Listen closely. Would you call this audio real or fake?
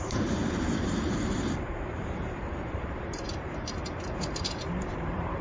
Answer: fake